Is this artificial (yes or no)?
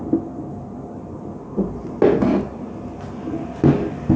no